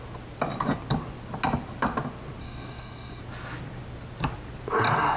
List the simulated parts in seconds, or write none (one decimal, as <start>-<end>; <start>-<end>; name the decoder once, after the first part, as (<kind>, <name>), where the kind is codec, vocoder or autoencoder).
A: 2.4-3.2 (codec, DAC)